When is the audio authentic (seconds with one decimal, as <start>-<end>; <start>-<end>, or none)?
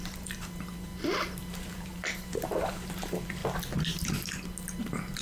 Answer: 0.9-1.5; 3.4-4.8